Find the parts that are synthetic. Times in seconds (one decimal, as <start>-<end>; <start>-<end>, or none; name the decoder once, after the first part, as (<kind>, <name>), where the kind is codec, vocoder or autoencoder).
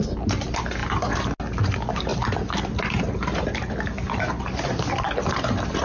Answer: none